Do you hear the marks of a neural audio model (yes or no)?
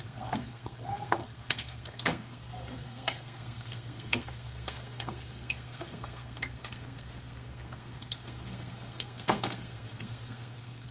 yes